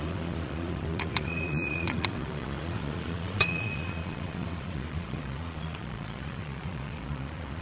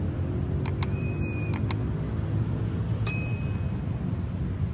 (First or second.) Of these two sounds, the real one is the second